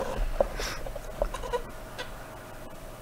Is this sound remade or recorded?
recorded